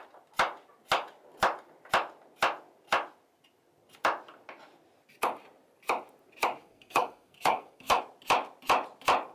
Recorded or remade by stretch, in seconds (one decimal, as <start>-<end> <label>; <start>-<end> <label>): 0.0-6.6 recorded; 6.6-8.0 remade; 8.0-9.3 recorded